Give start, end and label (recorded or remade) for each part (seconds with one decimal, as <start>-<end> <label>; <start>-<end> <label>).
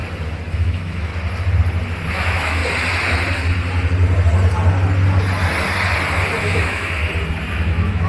0.0-0.5 recorded; 0.5-1.1 remade; 1.1-2.1 recorded; 2.1-2.6 remade; 2.6-6.4 recorded; 6.4-7.0 remade; 7.0-7.5 recorded; 7.5-8.1 remade